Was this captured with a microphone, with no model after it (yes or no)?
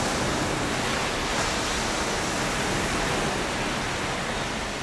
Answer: yes